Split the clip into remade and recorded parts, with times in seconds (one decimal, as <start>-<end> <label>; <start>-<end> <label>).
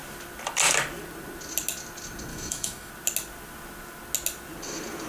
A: 0.0-2.3 recorded; 2.3-2.9 remade; 2.9-5.1 recorded